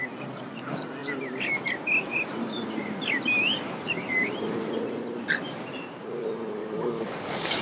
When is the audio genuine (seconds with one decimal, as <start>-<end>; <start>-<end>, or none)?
0.0-6.6